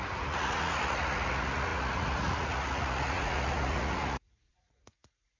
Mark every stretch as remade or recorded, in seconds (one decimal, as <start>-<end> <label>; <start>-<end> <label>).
0.0-5.4 remade